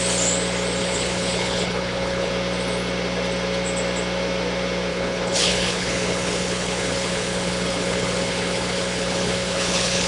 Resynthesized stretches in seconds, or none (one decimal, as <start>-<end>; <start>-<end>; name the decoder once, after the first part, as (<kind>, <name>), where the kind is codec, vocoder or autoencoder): 0.8-2.3 (codec, HILCodec); 4.9-10.1